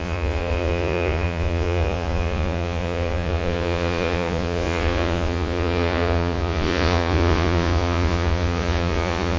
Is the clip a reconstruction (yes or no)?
yes